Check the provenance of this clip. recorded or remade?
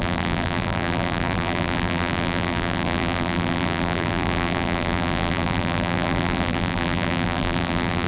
remade